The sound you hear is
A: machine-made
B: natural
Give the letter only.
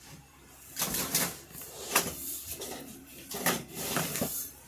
A